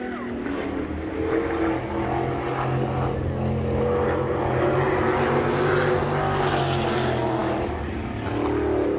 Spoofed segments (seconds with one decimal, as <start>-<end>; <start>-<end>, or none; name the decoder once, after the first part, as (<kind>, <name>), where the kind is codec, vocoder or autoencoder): none